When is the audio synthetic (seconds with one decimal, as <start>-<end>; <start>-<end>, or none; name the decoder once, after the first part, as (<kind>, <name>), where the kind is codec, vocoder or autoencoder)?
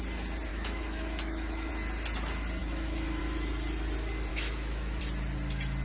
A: 0.5-1.7 (autoencoder, DAC-VAE); 2.6-3.2; 4.3-5.0